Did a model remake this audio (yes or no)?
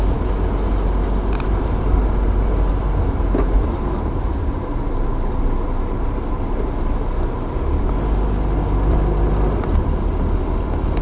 no